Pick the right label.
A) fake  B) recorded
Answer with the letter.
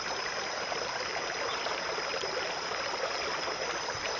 B